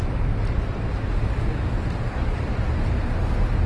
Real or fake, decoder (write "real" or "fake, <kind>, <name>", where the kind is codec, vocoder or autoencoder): real